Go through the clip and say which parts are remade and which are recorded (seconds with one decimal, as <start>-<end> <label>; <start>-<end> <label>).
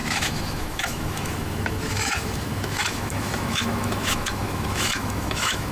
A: 0.0-5.7 remade